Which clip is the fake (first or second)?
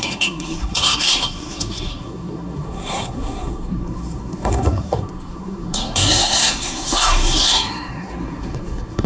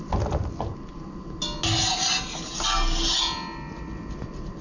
first